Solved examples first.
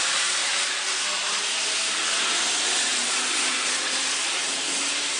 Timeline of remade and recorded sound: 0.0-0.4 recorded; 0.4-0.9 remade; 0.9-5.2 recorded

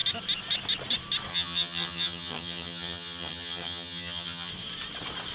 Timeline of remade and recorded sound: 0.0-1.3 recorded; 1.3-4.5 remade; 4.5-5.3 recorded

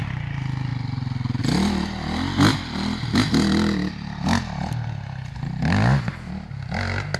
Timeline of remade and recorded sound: 0.0-7.2 recorded